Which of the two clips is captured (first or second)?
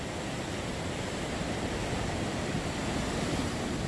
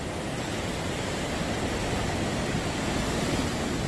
second